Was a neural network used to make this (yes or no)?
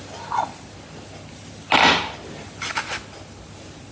no